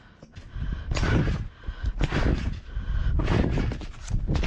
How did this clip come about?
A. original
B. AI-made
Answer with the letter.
A